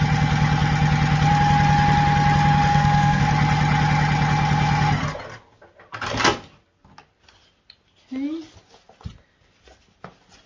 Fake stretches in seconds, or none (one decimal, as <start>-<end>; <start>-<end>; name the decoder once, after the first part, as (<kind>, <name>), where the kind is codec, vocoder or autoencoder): 2.7-3.2 (codec, SNAC)